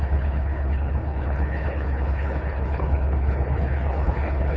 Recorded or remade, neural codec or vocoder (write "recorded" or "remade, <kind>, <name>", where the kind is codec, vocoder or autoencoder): remade, codec, HILCodec